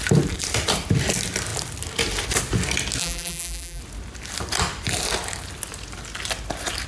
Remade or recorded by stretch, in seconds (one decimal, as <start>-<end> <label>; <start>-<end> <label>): 0.0-3.0 recorded; 3.0-3.8 remade; 3.8-6.9 recorded

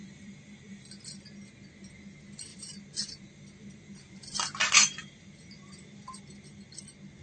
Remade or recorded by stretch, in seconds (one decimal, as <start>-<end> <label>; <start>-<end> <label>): 0.0-0.8 remade; 0.8-2.5 recorded; 2.5-6.2 remade; 6.2-7.2 recorded

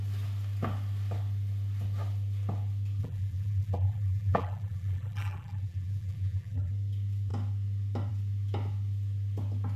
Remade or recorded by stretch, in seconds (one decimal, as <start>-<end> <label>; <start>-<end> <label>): 0.0-3.0 recorded; 3.0-6.7 remade; 6.7-9.8 recorded

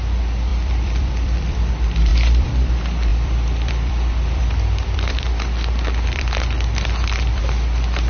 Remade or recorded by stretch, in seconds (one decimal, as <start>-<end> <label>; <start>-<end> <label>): 0.0-0.5 recorded; 0.5-1.7 remade; 1.7-2.1 recorded; 2.1-2.7 remade; 2.7-3.1 recorded; 3.1-7.4 remade; 7.4-8.1 recorded

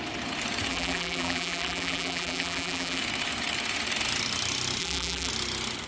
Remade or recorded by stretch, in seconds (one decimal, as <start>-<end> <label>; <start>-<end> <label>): 0.0-0.7 recorded; 0.7-3.0 remade; 3.0-4.8 recorded; 4.8-5.3 remade; 5.3-5.9 recorded

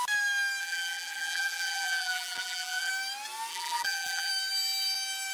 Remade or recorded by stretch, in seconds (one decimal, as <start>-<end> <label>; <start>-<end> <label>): 0.0-0.6 recorded; 0.6-2.9 remade; 2.9-3.5 recorded; 3.5-4.3 remade; 4.3-5.3 recorded

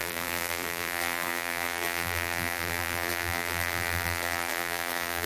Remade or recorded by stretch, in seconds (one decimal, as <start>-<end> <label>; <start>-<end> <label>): 0.0-5.3 remade

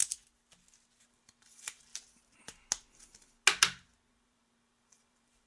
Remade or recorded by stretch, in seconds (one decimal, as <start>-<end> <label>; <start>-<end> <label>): 0.0-1.0 recorded; 1.0-1.9 remade; 1.9-4.1 recorded; 4.1-5.5 remade